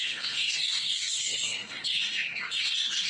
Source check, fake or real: fake